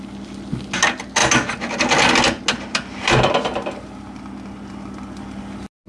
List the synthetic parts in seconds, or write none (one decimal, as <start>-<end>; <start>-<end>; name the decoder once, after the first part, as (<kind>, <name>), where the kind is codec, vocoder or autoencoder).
none